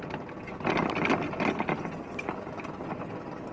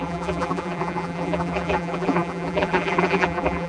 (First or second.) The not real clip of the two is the second